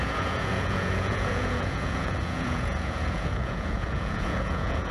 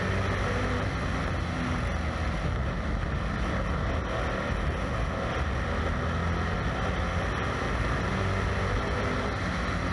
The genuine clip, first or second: second